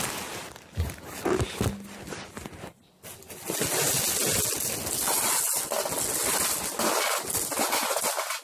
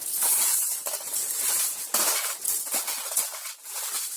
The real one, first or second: first